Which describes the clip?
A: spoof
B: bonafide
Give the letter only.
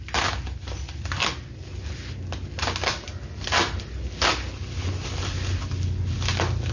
B